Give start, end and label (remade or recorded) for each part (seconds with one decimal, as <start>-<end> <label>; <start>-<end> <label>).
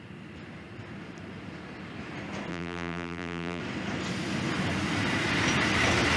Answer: 0.0-2.5 recorded; 2.5-3.6 remade; 3.6-6.2 recorded